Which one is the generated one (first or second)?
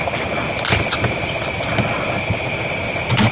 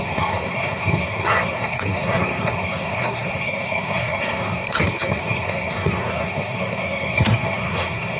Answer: second